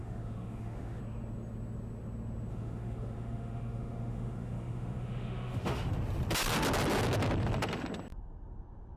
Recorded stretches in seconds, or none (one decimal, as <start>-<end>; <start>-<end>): 1.0-2.5; 5.9-9.0